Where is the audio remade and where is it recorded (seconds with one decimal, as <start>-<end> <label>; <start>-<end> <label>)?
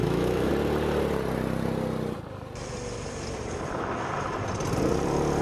0.0-0.5 remade; 0.5-5.4 recorded